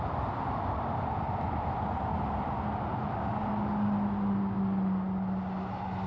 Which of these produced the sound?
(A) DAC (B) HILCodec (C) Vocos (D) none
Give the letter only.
D